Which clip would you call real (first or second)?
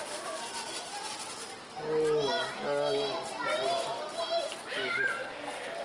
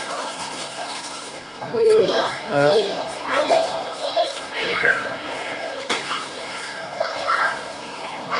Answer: first